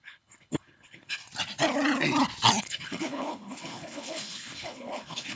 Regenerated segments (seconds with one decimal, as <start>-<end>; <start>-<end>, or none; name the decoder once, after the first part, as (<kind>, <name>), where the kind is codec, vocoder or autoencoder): 0.0-1.2 (codec, HILCodec); 2.6-5.4